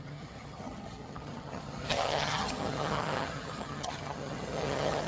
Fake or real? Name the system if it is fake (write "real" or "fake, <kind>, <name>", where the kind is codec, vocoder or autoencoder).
fake, vocoder, HiFi-GAN